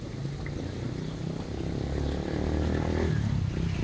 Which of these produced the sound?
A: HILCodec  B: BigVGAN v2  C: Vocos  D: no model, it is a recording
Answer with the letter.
D